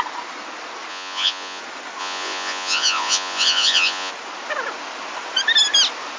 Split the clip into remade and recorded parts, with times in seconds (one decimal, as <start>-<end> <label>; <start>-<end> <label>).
0.0-0.9 recorded; 0.9-1.6 remade; 1.6-2.0 recorded; 2.0-4.1 remade; 4.1-6.2 recorded